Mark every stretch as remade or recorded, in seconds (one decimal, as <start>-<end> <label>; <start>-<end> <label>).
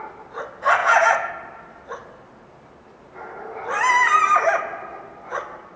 0.0-0.8 recorded; 0.8-1.3 remade; 1.3-5.8 recorded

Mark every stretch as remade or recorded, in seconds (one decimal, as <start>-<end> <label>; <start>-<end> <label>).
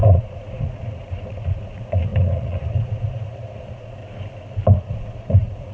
0.0-4.0 remade; 4.0-4.8 recorded; 4.8-5.7 remade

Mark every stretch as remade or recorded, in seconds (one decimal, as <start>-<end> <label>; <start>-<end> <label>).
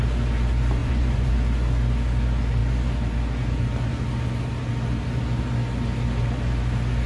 0.0-0.8 recorded; 0.8-1.3 remade; 1.3-7.1 recorded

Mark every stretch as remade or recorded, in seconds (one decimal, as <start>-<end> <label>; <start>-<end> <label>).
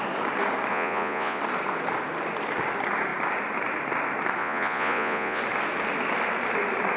0.0-0.7 recorded; 0.7-1.4 remade; 1.4-4.4 recorded; 4.4-5.4 remade; 5.4-7.0 recorded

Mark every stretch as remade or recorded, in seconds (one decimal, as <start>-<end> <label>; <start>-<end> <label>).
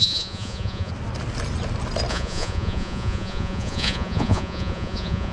0.0-0.9 remade; 0.9-2.1 recorded; 2.1-5.3 remade